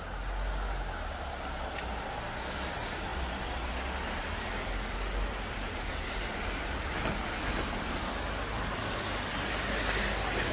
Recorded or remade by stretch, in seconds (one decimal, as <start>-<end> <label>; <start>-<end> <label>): 0.0-10.5 recorded